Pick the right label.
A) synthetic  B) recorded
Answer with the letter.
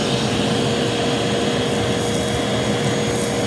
B